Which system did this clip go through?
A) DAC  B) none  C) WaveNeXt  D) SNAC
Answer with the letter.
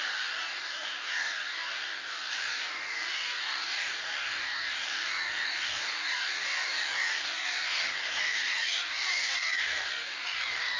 A